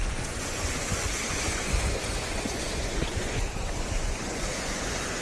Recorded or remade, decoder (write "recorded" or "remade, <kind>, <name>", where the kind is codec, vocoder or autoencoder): remade, vocoder, Vocos